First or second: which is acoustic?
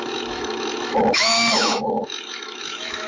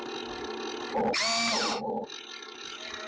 second